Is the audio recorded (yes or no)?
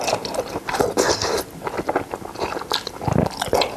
yes